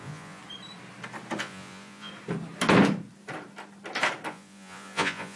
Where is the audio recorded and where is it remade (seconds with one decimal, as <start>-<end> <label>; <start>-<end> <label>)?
0.0-0.4 remade; 0.4-1.4 recorded; 1.4-2.1 remade; 2.1-4.3 recorded; 4.3-5.4 remade